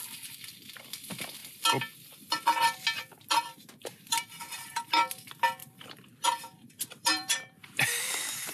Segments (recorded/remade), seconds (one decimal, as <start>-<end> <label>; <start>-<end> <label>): 0.0-4.1 recorded; 4.1-4.8 remade; 4.8-5.6 recorded; 5.6-8.0 remade; 8.0-8.5 recorded

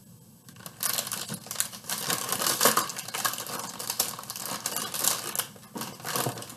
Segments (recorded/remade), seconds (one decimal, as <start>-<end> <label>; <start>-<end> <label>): 0.0-6.6 recorded

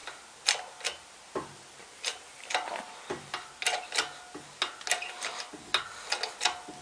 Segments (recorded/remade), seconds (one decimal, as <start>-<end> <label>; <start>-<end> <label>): 0.0-6.8 recorded

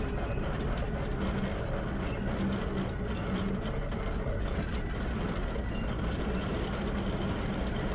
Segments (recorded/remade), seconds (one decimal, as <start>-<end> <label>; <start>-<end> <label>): 0.0-7.9 recorded